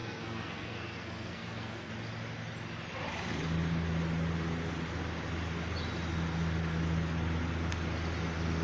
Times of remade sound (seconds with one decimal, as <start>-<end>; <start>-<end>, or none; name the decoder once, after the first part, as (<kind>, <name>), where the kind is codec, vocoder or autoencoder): 0.0-1.9 (codec, SNAC)